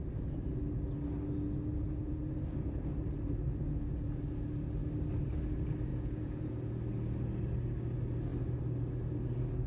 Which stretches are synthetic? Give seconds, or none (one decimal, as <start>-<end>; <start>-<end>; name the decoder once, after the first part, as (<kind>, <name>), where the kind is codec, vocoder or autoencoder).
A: 1.7-2.2 (vocoder, Vocos); 5.9-6.7